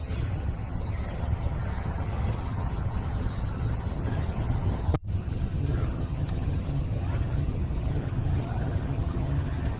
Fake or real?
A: fake